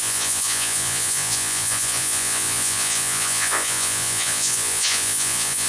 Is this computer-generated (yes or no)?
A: yes